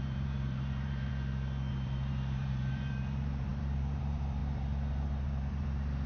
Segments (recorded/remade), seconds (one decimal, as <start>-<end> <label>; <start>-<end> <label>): 0.0-1.1 remade; 1.1-1.7 recorded; 1.7-6.1 remade